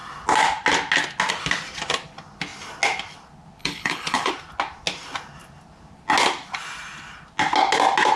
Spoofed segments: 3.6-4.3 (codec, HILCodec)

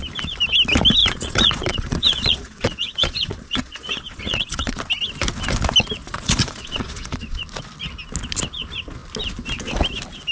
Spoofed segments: 1.0-4.8 (vocoder, Vocos); 6.0-7.4

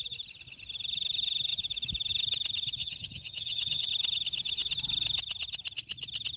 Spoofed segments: 2.8-3.9 (vocoder, HiFi-GAN)

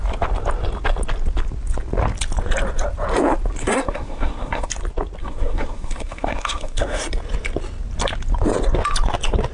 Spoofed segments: 3.6-4.7 (codec, SNAC); 5.2-7.0

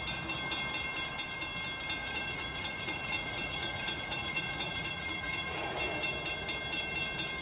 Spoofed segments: 2.0-5.8 (vocoder, Vocos)

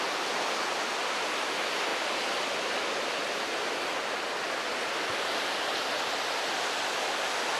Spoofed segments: none

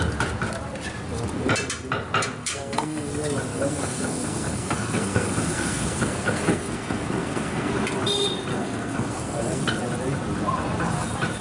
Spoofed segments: 2.4-3.1 (codec, SNAC); 3.5-7.7; 8.5-9.6